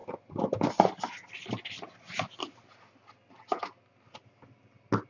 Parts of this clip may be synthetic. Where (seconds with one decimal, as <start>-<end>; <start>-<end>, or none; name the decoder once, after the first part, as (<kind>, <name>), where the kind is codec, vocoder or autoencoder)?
none

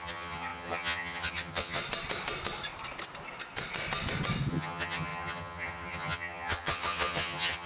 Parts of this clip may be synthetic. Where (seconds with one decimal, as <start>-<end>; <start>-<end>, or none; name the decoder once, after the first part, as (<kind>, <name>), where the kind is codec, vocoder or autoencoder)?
0.0-1.8 (vocoder, HiFi-GAN); 4.5-7.7

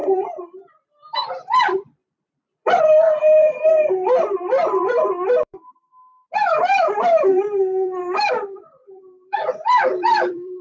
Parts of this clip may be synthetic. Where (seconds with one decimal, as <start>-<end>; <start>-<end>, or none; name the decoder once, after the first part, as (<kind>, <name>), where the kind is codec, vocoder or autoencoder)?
0.0-5.9 (vocoder, BigVGAN v2); 6.6-10.6

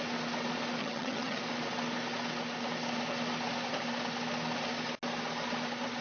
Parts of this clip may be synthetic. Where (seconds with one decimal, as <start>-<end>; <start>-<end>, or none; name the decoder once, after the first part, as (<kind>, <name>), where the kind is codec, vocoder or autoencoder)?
0.8-1.4 (vocoder, HiFi-GAN)

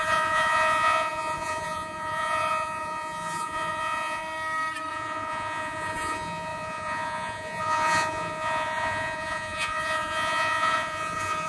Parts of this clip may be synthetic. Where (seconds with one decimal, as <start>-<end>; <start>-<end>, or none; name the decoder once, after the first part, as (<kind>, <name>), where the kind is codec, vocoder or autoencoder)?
0.0-4.2 (vocoder, Vocos); 4.9-11.5